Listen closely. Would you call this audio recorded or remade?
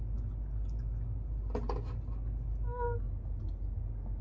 recorded